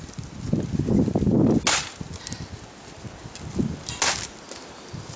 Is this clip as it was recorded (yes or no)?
yes